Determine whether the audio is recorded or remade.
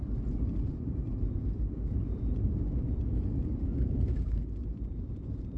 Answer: remade